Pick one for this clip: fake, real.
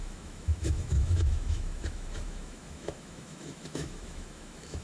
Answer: fake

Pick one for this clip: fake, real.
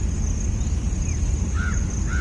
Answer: real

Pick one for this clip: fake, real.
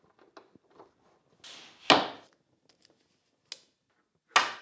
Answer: real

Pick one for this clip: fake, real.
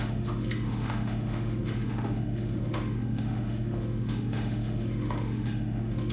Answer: fake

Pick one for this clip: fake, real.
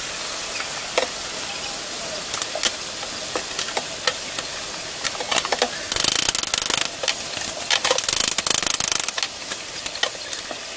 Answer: real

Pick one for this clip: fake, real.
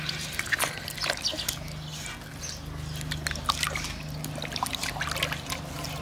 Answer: real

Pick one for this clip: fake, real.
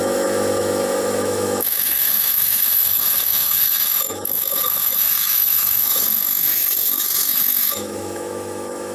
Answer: fake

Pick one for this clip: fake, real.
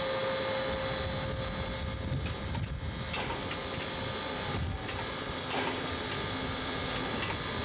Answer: real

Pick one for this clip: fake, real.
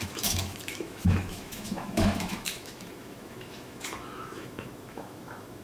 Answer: fake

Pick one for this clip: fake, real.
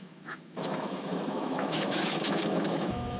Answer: fake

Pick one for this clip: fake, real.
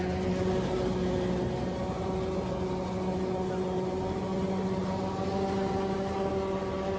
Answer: real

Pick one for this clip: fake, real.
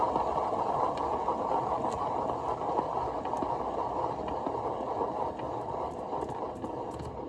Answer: real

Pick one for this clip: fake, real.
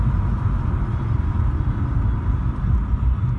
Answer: real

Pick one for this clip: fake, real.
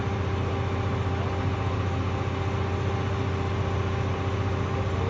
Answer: real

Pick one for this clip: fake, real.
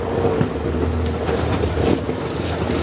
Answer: real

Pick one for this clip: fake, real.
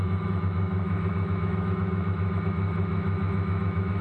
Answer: fake